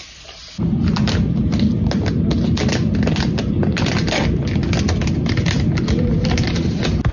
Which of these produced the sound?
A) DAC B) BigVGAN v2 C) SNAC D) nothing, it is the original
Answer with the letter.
D